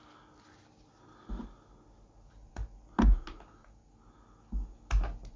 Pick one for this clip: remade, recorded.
recorded